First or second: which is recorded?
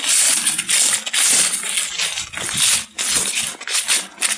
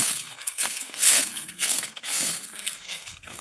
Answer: first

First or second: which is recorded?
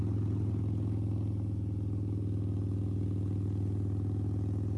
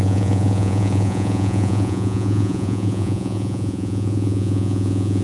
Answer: first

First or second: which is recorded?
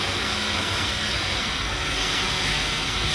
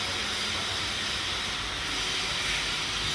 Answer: second